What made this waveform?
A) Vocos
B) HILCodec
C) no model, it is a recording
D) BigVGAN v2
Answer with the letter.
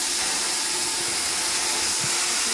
C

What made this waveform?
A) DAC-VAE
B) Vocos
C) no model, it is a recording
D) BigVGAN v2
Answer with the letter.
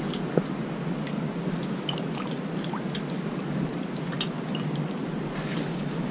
C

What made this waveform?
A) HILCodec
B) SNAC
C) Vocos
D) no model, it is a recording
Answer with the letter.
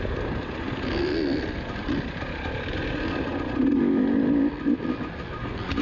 D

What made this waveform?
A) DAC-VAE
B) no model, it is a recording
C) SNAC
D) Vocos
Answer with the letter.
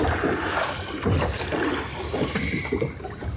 B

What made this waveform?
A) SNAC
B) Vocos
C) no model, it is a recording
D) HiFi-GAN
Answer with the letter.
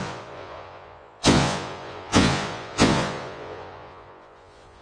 B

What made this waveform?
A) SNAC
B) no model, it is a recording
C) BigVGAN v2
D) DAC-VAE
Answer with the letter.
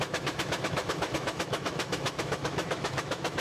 D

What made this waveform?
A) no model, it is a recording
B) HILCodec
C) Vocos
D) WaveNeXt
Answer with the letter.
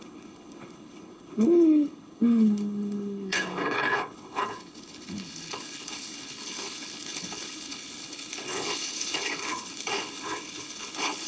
B